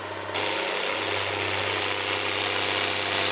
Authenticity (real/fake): real